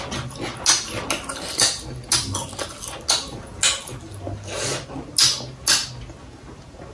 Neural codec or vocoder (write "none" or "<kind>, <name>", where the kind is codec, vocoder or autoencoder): none